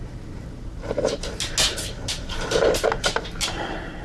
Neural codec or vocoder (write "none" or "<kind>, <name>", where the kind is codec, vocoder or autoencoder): none